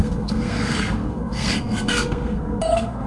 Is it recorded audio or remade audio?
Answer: remade